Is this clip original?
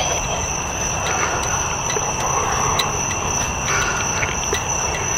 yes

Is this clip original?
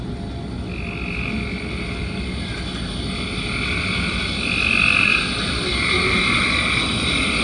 yes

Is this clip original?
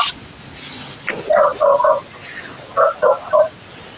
yes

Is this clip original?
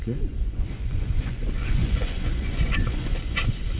no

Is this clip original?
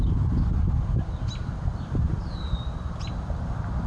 yes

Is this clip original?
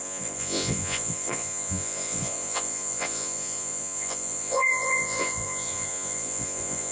no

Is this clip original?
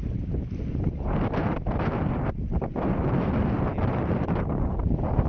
yes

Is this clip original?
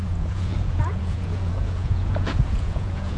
no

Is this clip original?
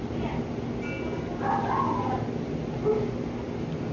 yes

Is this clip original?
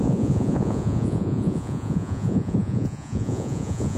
no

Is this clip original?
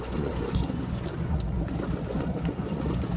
no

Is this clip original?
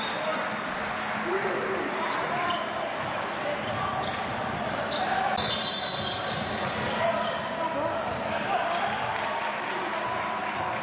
yes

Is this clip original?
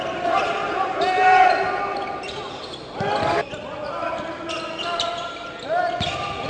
yes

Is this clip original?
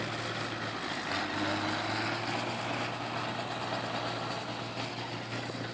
yes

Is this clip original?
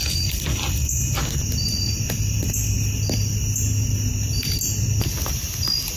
yes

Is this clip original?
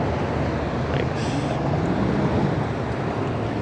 yes